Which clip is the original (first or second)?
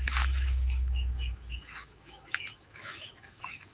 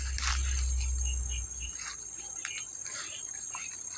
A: second